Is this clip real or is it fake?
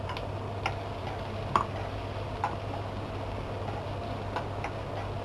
real